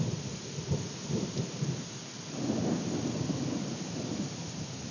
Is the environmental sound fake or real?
fake